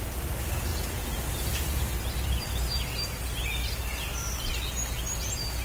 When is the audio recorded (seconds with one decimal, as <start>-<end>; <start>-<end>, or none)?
0.0-0.7; 1.8-5.6